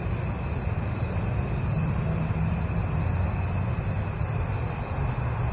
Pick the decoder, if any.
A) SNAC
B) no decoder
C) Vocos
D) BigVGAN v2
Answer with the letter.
B